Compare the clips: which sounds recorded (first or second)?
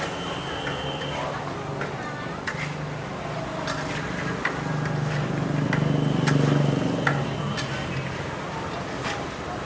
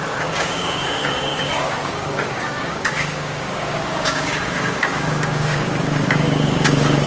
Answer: first